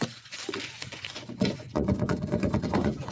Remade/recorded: remade